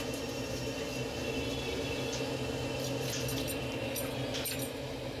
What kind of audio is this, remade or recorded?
recorded